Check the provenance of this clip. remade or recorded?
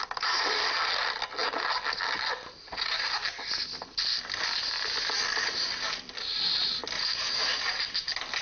recorded